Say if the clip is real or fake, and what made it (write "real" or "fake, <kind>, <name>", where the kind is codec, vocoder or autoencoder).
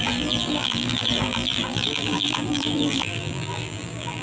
fake, vocoder, BigVGAN v2